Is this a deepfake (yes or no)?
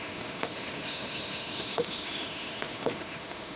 yes